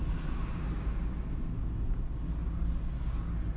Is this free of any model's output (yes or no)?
yes